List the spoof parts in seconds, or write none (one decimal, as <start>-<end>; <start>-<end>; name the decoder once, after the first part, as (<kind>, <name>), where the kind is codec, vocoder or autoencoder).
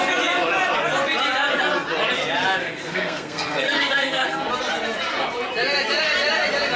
2.6-4.5 (codec, SNAC)